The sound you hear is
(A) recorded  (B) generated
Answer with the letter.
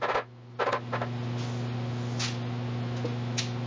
A